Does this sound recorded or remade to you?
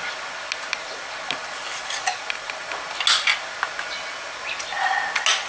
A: recorded